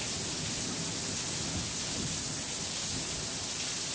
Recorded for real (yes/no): yes